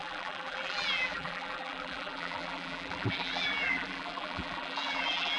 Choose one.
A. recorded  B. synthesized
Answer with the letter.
B